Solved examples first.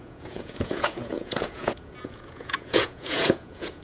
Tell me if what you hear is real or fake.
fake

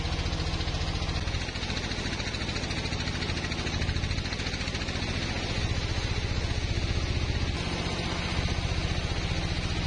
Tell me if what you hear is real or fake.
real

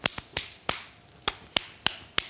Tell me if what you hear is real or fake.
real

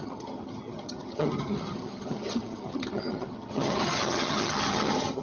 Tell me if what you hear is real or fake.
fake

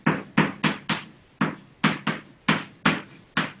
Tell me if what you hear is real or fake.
real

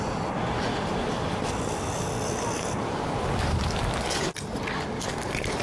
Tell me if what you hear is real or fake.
real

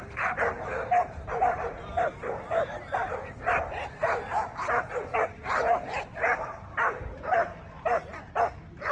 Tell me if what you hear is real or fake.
fake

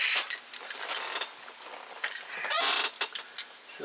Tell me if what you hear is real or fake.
real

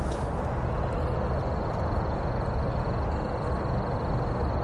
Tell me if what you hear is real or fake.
real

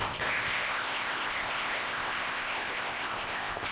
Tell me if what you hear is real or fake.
fake